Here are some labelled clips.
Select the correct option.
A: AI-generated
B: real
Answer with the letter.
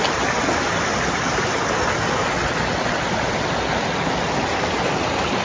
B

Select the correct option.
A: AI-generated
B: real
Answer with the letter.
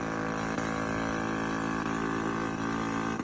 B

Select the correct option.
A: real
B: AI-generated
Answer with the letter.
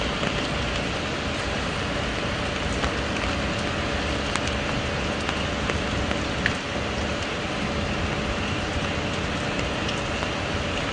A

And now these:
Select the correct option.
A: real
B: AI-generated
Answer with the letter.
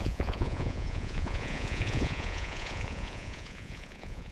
B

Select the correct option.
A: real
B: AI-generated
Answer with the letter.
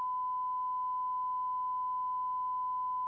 A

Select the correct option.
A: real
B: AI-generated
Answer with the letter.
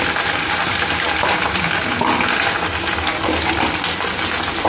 A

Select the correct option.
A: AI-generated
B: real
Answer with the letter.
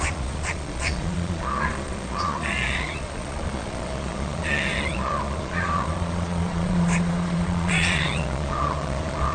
A